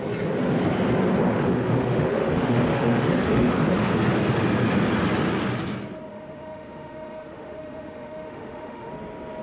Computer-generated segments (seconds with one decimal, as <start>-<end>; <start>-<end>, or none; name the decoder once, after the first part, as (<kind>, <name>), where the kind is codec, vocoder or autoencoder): 1.2-3.9 (autoencoder, DAC-VAE); 6.1-8.9